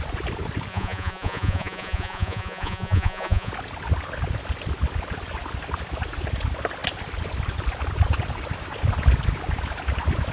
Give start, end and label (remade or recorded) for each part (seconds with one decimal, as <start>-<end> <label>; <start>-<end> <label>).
0.0-0.7 recorded; 0.7-3.5 remade; 3.5-10.3 recorded